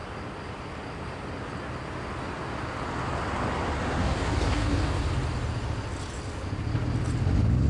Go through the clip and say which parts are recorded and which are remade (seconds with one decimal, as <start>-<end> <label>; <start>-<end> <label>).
0.0-4.0 recorded; 4.0-5.0 remade; 5.0-7.7 recorded